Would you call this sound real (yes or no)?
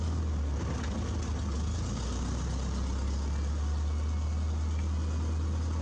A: yes